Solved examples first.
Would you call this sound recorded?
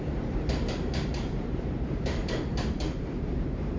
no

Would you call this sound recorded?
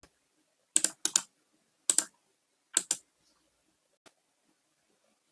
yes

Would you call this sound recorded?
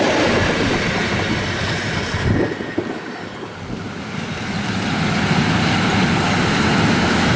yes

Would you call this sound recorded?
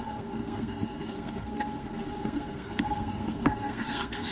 no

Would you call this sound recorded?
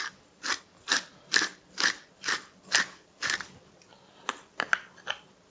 yes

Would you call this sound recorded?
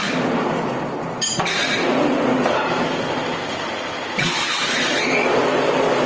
yes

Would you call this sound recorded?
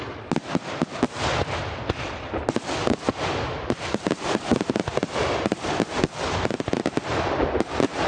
yes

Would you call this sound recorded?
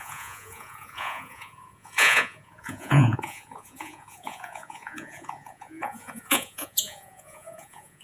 no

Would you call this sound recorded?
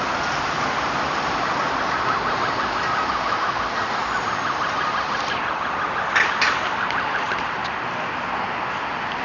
yes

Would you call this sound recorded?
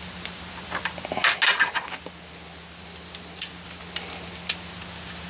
yes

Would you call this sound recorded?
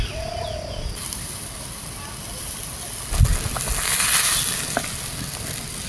yes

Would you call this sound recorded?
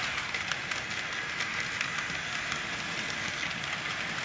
yes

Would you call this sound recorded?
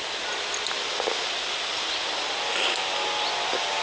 yes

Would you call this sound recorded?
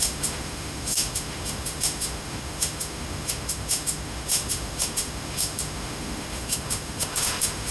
no